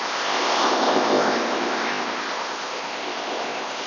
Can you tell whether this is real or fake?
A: fake